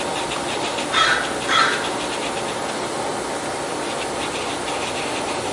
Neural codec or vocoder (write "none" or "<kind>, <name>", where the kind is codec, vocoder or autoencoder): none